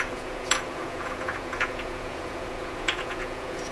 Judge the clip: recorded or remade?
remade